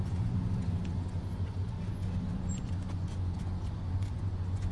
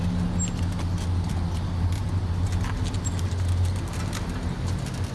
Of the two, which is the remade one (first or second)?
first